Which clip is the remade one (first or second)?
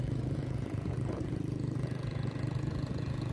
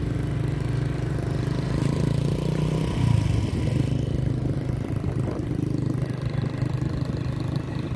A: first